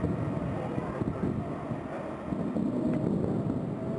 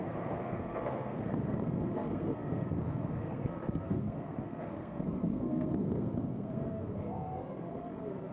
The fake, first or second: second